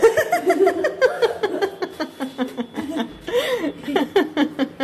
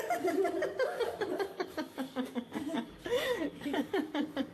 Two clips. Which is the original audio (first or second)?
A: first